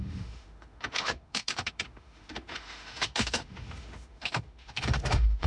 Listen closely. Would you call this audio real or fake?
fake